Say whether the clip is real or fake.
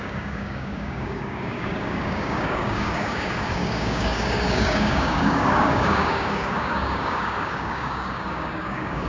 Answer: fake